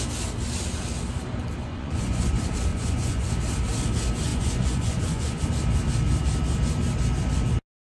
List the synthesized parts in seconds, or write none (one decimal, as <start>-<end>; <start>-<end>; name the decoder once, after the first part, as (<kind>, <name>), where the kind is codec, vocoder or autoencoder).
1.6-2.3 (vocoder, Vocos); 2.7-3.3; 4.3-5.4